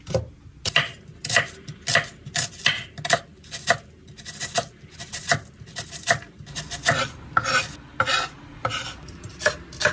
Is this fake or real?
real